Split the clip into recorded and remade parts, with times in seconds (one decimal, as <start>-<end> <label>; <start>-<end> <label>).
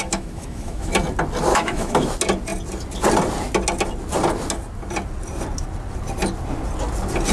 0.0-0.9 remade; 0.9-1.5 recorded; 1.5-2.1 remade; 2.1-7.3 recorded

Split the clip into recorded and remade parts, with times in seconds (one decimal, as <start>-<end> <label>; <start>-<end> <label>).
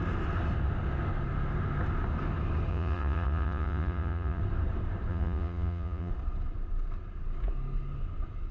0.0-2.7 recorded; 2.7-4.4 remade; 4.4-5.1 recorded; 5.1-6.1 remade; 6.1-8.5 recorded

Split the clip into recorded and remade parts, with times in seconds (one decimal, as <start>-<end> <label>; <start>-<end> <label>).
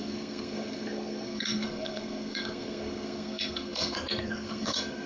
0.0-5.1 remade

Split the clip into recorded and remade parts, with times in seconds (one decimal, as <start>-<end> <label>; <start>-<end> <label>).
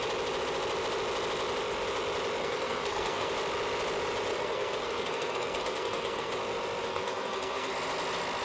0.0-2.4 recorded; 2.4-3.3 remade; 3.3-4.3 recorded; 4.3-6.3 remade; 6.3-6.9 recorded; 6.9-7.7 remade; 7.7-8.4 recorded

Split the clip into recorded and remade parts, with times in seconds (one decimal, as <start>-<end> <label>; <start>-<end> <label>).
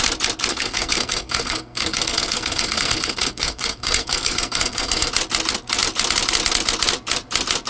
0.0-0.5 recorded; 0.5-5.1 remade; 5.1-7.7 recorded